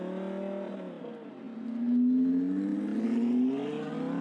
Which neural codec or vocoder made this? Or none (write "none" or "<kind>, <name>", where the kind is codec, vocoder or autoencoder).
none